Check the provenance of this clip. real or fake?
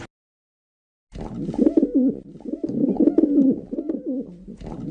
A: real